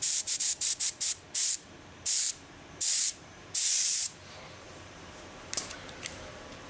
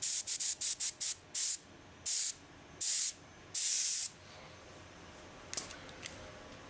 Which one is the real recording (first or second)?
second